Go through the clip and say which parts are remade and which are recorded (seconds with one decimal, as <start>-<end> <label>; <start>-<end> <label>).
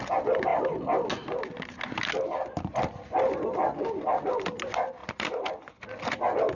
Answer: 0.0-6.5 recorded